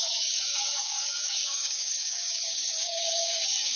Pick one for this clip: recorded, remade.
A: remade